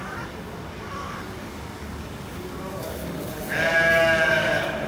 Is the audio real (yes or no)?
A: no